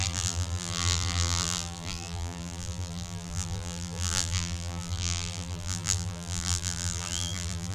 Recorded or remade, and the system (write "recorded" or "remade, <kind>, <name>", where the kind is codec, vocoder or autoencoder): remade, vocoder, BigVGAN v2